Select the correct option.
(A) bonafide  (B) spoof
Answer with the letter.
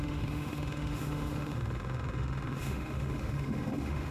B